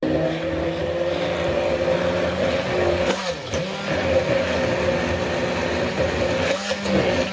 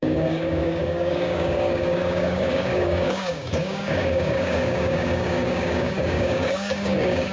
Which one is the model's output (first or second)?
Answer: second